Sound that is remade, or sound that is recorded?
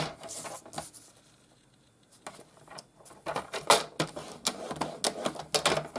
recorded